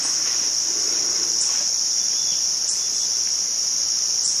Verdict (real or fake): real